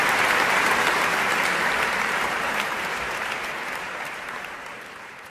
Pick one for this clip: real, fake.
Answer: fake